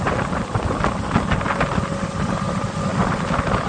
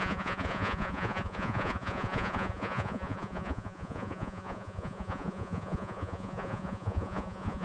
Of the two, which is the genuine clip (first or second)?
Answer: first